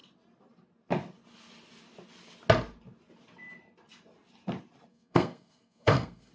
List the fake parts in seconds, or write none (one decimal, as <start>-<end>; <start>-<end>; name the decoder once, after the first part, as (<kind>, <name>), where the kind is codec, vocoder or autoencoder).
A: 4.9-6.3 (codec, SNAC)